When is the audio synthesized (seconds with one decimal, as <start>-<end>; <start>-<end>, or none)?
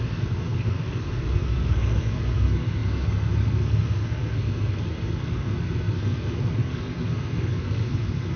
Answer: 0.0-8.4